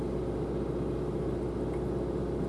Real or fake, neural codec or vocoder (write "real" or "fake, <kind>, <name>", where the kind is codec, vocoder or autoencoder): real